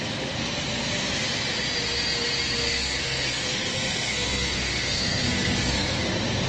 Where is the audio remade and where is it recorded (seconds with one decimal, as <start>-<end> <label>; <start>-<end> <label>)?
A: 0.0-2.6 recorded; 2.6-6.0 remade; 6.0-6.5 recorded

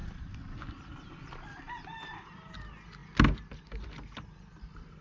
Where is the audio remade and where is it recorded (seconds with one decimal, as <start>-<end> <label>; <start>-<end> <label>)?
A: 0.0-0.6 remade; 0.6-5.0 recorded

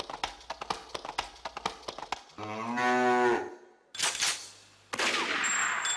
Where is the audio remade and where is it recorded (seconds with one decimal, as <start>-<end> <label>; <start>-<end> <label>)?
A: 0.0-6.0 recorded

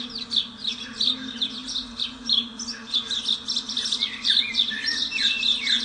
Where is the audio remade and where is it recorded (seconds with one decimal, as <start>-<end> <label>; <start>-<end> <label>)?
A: 0.0-5.8 recorded

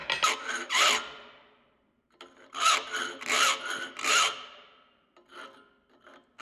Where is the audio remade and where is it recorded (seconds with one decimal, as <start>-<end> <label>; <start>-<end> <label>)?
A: 0.0-6.4 recorded

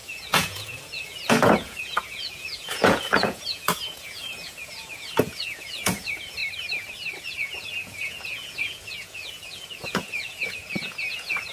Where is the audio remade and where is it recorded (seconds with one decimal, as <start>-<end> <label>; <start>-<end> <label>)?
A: 0.0-6.4 remade; 6.4-7.2 recorded; 7.2-11.5 remade

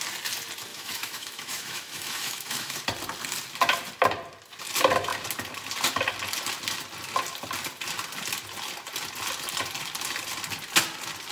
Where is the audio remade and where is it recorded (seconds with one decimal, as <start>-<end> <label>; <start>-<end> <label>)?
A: 0.0-0.7 recorded; 0.7-2.8 remade; 2.8-11.3 recorded

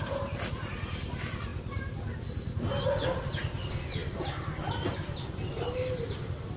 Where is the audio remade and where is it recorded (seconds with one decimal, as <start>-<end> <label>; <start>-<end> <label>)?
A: 0.0-6.6 recorded